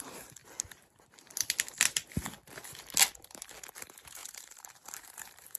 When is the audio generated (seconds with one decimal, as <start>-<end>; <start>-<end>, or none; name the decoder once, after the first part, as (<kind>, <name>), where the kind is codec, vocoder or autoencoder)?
0.0-0.4 (vocoder, BigVGAN v2); 3.8-5.6